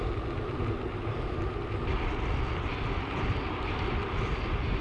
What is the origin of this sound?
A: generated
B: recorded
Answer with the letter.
B